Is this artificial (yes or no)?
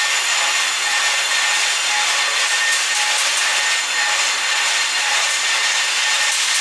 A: no